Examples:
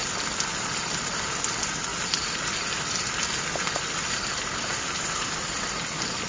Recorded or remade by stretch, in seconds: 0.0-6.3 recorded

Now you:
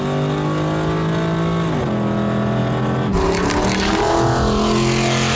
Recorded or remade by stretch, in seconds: 0.0-5.4 recorded

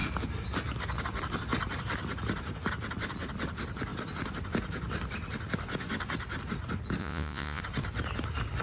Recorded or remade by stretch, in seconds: 0.0-7.0 recorded; 7.0-7.6 remade; 7.6-8.6 recorded

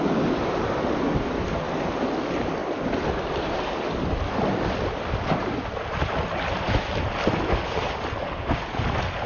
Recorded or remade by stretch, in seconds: 0.0-2.6 recorded; 2.6-5.7 remade; 5.7-9.3 recorded

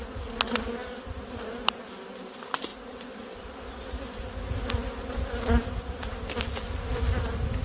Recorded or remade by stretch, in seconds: 0.0-7.6 recorded

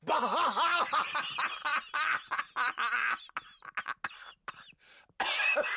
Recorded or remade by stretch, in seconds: 0.0-5.8 recorded